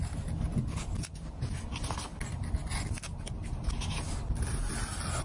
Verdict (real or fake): real